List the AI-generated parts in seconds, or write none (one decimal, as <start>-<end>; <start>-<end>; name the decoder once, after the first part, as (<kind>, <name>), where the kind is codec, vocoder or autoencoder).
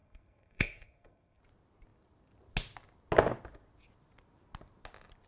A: 0.0-1.4 (codec, SNAC)